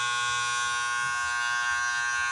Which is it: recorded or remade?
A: recorded